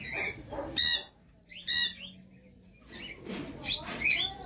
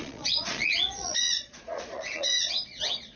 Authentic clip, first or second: first